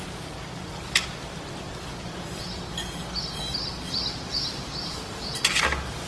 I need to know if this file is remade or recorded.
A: remade